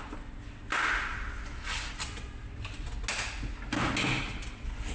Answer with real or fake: real